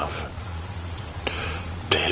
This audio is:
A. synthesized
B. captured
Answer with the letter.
A